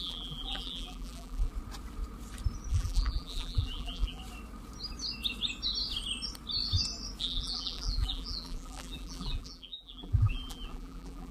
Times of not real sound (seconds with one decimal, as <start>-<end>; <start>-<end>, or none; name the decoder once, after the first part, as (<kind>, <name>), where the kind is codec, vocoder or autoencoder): 0.0-1.5 (vocoder, BigVGAN v2); 2.7-4.2; 7.2-11.3